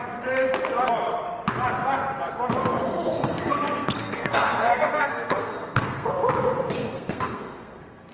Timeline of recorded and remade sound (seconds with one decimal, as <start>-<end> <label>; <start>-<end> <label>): 0.0-2.6 recorded; 2.6-6.1 remade; 6.1-6.8 recorded; 6.8-8.1 remade